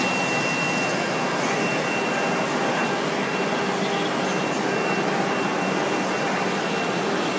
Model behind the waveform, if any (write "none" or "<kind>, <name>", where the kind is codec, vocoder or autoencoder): none